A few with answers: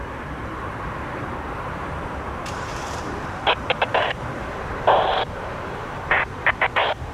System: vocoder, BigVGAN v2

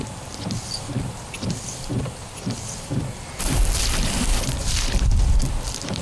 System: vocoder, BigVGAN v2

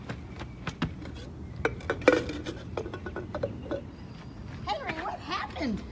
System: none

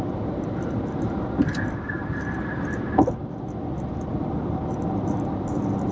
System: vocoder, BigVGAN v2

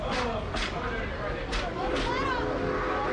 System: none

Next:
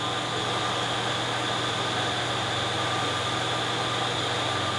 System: none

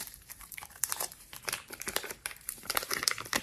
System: vocoder, BigVGAN v2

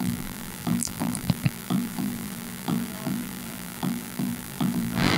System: vocoder, BigVGAN v2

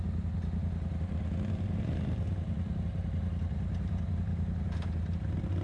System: none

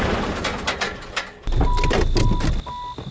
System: none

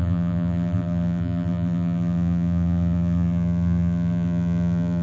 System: vocoder, BigVGAN v2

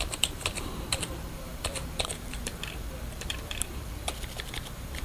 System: vocoder, BigVGAN v2